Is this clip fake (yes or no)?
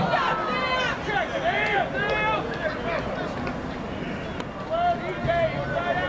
no